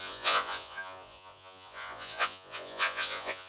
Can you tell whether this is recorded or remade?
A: remade